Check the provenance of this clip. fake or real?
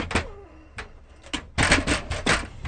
real